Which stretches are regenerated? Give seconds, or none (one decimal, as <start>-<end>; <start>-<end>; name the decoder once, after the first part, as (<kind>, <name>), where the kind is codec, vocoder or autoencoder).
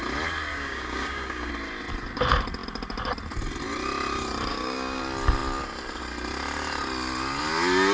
0.5-1.5 (codec, DAC); 4.5-5.0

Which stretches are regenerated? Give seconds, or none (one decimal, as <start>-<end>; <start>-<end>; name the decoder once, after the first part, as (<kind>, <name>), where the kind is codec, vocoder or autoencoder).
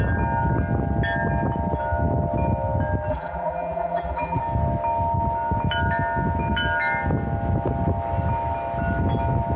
3.1-4.4 (vocoder, BigVGAN v2)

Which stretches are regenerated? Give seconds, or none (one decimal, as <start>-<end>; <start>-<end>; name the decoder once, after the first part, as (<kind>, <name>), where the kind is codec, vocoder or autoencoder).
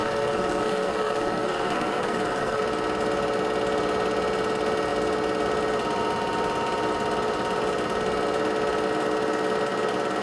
0.0-2.6 (codec, SNAC)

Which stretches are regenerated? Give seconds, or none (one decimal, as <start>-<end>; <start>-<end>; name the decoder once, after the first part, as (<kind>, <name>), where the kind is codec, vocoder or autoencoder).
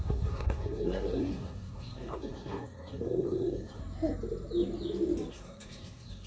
0.0-3.8 (codec, SNAC); 5.3-6.3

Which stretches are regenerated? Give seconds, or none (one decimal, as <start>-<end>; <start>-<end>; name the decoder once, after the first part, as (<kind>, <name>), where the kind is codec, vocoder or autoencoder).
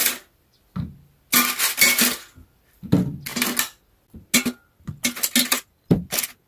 none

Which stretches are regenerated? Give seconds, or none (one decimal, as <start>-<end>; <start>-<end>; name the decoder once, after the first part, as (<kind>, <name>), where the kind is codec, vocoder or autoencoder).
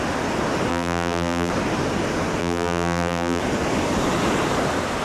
0.7-1.5 (vocoder, BigVGAN v2); 2.4-3.4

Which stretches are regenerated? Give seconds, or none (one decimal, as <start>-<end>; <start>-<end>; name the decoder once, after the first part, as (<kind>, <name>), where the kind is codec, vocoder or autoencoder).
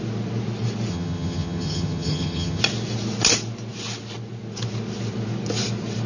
0.9-2.6 (vocoder, HiFi-GAN)